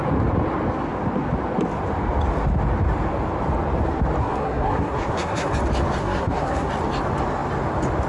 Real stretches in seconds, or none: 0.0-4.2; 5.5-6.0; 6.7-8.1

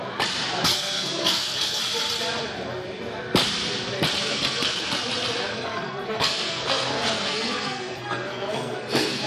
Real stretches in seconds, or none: 0.0-0.7; 1.8-4.2; 4.9-5.5

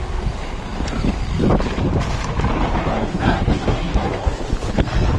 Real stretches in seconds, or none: 0.0-2.8; 4.4-5.2

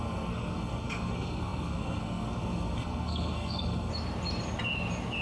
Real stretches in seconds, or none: 3.9-5.2

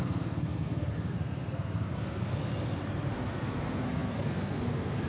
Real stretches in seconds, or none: 2.5-3.1